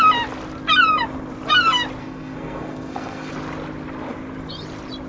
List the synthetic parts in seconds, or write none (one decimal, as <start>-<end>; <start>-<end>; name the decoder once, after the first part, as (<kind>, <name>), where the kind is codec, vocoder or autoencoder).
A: 2.0-3.3 (codec, SNAC)